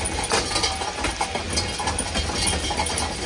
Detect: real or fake real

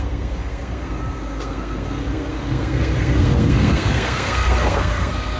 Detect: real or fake fake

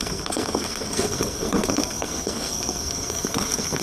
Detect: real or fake fake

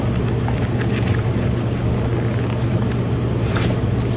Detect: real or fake real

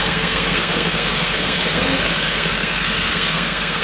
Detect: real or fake fake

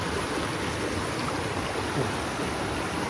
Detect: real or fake real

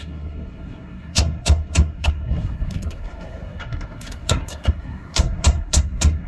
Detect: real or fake fake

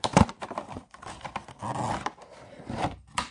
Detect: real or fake real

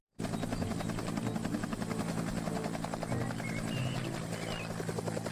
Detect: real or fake real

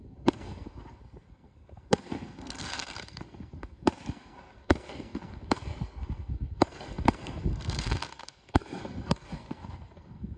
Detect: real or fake fake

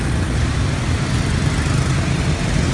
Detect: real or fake real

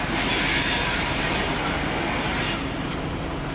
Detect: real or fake real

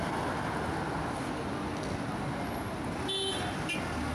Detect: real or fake real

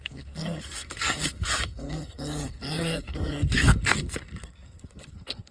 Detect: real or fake fake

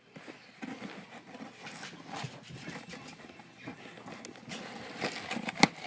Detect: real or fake real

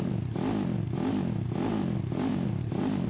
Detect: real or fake real